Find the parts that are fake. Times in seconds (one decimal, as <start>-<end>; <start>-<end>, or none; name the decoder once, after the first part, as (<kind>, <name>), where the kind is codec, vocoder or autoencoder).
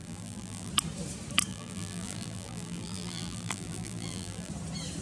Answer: 0.0-0.7 (vocoder, BigVGAN v2); 1.5-4.5